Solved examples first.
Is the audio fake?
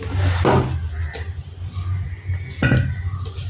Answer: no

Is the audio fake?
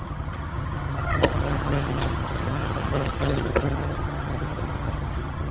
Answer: yes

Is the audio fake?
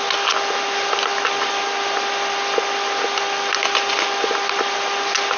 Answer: no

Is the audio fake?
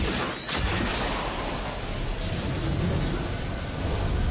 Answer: no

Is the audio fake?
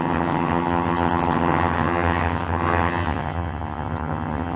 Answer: yes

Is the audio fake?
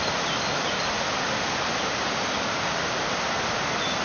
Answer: no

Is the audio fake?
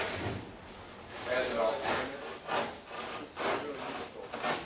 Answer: no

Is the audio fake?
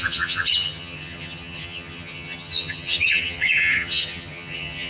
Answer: yes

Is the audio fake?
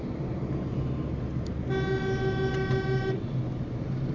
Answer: no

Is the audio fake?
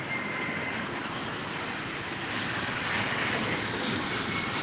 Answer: no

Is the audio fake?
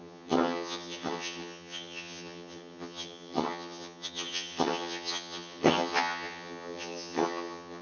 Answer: yes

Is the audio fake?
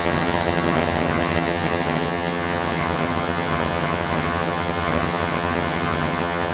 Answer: yes